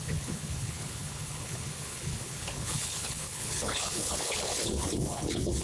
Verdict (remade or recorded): remade